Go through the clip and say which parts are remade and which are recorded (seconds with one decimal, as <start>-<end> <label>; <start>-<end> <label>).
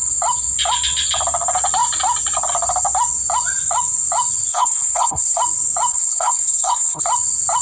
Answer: 0.0-4.5 recorded; 4.5-5.4 remade; 5.4-5.9 recorded; 5.9-7.0 remade; 7.0-7.6 recorded